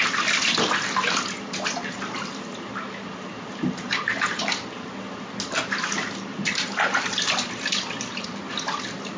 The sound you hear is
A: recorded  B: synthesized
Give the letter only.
A